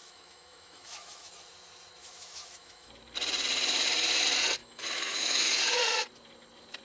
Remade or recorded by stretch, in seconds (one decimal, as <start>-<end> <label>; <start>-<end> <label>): 0.0-1.3 remade; 1.3-2.0 recorded; 2.0-2.9 remade; 2.9-4.6 recorded; 4.6-5.6 remade; 5.6-6.8 recorded